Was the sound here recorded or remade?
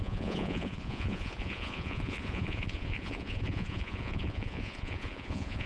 remade